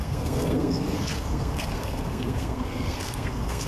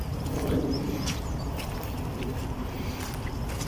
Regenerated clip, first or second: first